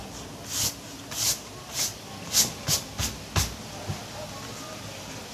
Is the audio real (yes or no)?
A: yes